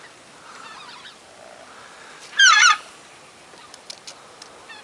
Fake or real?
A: real